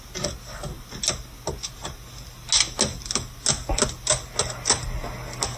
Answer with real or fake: real